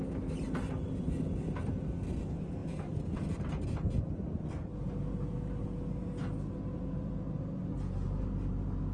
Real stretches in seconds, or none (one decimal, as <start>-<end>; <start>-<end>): 0.0-8.9